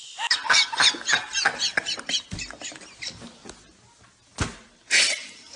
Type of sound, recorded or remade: recorded